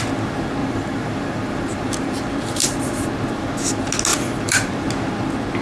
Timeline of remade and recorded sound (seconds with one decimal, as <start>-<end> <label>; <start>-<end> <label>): 0.0-0.6 recorded; 0.6-3.1 remade; 3.1-4.1 recorded; 4.1-4.7 remade; 4.7-5.6 recorded